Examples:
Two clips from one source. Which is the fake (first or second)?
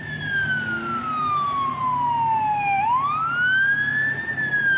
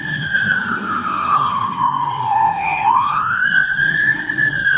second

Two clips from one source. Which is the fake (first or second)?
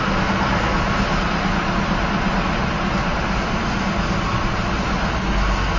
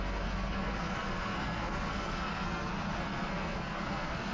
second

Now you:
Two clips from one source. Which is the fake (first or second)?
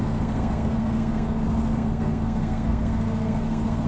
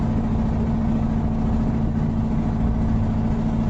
first